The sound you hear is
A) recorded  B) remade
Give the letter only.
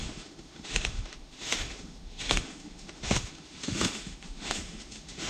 B